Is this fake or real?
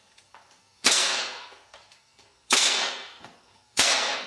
fake